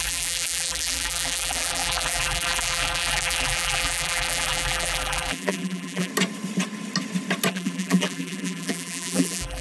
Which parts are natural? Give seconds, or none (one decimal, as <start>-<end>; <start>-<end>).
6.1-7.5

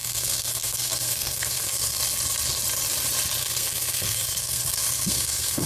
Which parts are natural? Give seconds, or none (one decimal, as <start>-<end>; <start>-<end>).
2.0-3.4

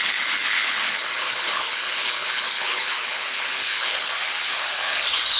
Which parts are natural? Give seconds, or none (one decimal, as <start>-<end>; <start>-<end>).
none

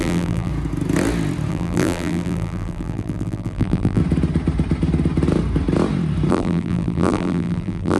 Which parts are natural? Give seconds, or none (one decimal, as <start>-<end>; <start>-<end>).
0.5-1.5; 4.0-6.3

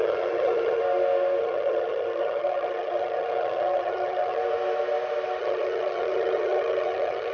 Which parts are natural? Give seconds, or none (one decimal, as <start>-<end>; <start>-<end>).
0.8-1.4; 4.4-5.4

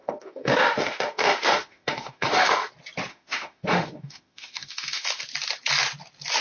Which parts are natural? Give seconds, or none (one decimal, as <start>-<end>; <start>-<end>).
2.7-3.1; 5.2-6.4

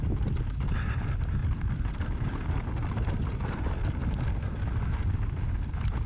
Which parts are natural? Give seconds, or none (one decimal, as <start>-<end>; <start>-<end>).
0.0-1.4; 2.5-6.1

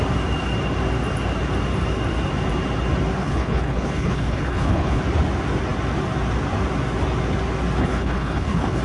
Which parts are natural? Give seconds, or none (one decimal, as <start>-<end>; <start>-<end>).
0.0-3.2; 5.0-7.8